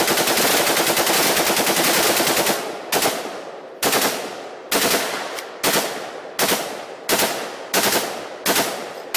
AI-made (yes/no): no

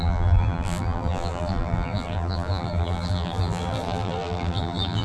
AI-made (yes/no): yes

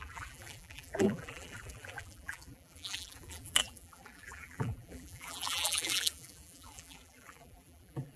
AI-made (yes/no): yes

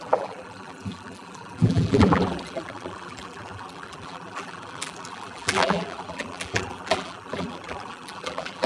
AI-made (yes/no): yes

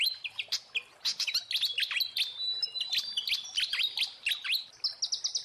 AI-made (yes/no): no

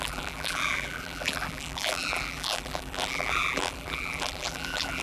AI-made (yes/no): yes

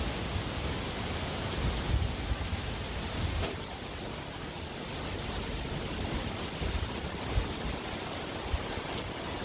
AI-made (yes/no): no